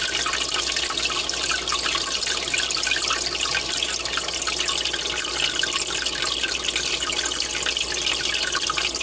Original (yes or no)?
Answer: yes